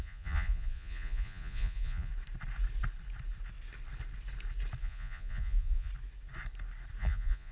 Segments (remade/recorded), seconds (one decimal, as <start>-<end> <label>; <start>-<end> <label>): 0.0-2.1 remade; 2.1-4.8 recorded; 4.8-5.9 remade; 5.9-7.0 recorded; 7.0-7.5 remade